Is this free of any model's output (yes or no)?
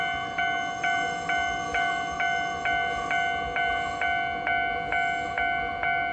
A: yes